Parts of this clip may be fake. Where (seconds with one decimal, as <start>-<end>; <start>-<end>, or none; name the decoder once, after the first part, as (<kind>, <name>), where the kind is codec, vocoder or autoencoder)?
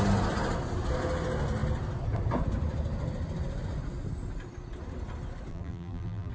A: 5.5-6.3 (vocoder, BigVGAN v2)